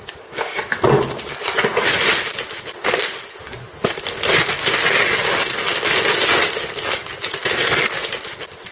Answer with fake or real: real